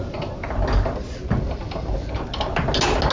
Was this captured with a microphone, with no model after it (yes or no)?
yes